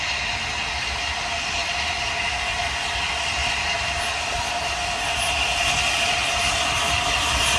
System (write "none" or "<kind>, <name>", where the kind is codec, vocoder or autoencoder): none